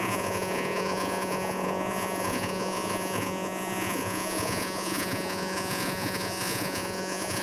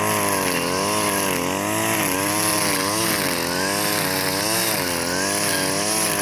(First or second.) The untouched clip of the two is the second